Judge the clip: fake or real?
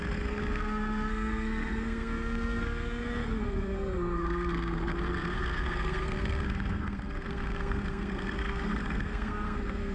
fake